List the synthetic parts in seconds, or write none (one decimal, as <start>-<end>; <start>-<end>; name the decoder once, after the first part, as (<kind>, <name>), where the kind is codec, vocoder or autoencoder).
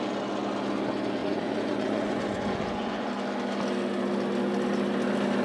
1.2-3.1 (vocoder, Vocos)